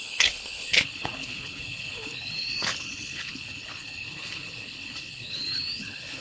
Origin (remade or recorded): remade